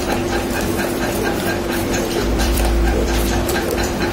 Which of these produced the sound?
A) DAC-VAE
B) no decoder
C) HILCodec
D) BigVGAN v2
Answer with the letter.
D